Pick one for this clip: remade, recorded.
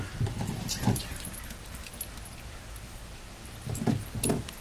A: recorded